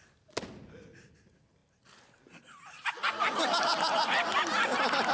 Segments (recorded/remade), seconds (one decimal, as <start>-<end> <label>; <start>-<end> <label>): 0.0-5.1 recorded